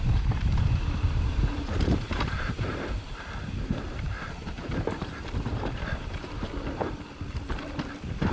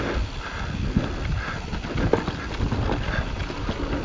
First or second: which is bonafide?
second